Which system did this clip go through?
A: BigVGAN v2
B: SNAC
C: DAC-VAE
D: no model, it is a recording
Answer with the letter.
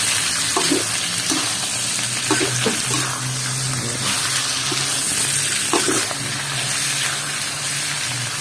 D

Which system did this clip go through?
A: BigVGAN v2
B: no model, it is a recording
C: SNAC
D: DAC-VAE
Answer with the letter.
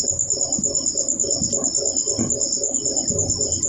B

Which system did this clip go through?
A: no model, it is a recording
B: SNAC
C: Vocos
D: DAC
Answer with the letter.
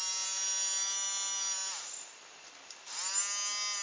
A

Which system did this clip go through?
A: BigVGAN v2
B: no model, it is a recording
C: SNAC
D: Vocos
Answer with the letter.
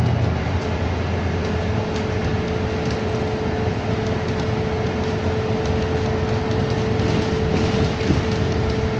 B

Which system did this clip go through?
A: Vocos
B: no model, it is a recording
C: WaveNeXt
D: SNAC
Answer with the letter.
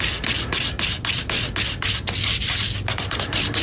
B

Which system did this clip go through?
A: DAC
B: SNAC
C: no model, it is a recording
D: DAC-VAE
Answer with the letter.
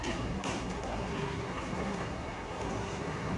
B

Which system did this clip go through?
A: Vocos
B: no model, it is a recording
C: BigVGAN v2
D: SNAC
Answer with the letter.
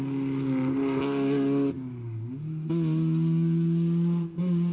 B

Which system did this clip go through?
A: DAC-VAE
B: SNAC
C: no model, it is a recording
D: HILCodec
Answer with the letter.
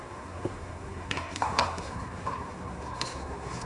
B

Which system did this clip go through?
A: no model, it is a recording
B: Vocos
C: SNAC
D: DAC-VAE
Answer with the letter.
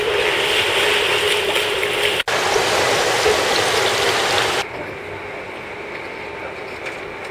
A